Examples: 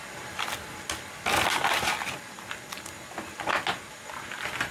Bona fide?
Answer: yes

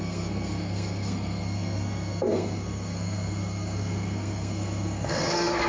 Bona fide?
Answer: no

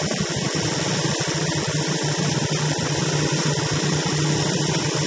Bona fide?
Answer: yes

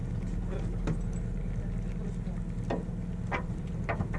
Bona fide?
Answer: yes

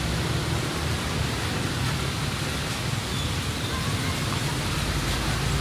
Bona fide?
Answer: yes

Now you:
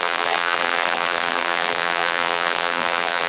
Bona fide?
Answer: no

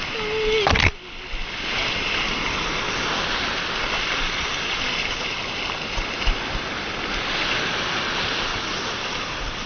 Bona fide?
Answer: yes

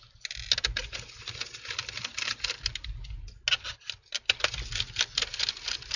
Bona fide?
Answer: yes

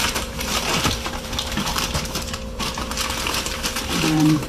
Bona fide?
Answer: no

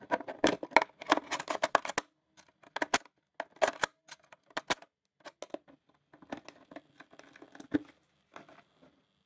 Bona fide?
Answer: yes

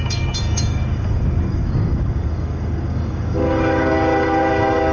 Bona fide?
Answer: no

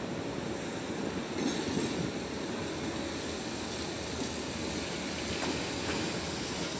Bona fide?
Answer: yes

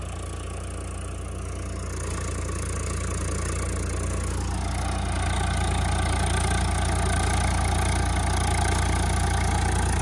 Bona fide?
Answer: yes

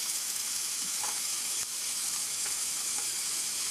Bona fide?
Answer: no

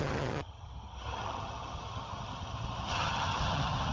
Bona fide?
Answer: no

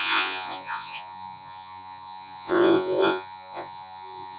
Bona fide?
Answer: no